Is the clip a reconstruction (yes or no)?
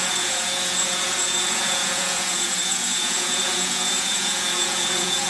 yes